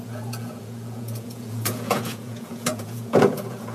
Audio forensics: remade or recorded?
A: remade